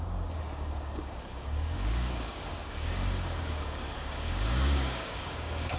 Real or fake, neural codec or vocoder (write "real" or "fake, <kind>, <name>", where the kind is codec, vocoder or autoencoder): fake, codec, DAC